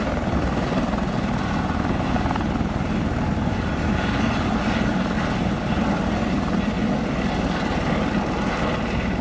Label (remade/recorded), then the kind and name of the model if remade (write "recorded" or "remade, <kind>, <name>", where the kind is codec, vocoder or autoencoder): recorded